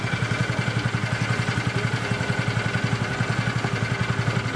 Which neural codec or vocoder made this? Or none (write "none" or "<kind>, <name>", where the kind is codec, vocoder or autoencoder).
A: none